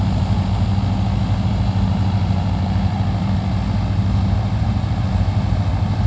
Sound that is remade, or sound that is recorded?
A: recorded